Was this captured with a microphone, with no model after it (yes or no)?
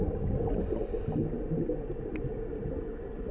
yes